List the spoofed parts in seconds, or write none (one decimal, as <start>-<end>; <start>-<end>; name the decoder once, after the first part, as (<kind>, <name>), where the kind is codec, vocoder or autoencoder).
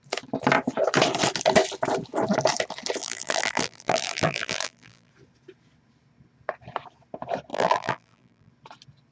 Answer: 3.0-5.1 (vocoder, BigVGAN v2); 7.5-8.5